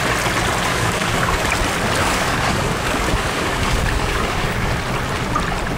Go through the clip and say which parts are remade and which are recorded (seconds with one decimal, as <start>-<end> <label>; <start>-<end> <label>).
0.0-0.7 recorded; 0.7-1.5 remade; 1.5-2.0 recorded; 2.0-4.7 remade; 4.7-5.8 recorded